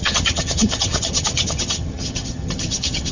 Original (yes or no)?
no